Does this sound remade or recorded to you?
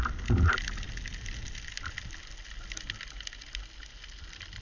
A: recorded